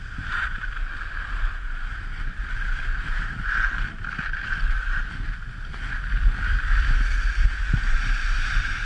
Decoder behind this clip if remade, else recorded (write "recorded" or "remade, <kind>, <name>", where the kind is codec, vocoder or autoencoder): recorded